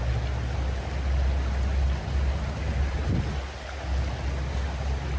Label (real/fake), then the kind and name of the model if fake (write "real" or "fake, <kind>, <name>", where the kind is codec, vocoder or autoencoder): real